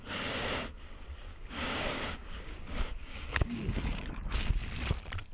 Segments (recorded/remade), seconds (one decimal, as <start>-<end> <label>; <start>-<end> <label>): 0.0-1.3 recorded; 1.3-4.5 remade; 4.5-5.3 recorded